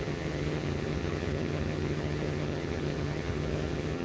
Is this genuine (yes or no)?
no